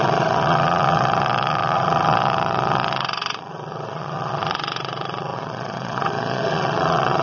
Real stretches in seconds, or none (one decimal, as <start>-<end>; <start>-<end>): none